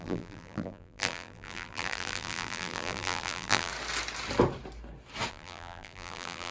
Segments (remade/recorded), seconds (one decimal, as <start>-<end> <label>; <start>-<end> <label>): 0.0-3.7 remade; 3.7-5.3 recorded; 5.3-6.5 remade